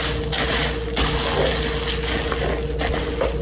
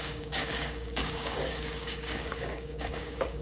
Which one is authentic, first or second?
first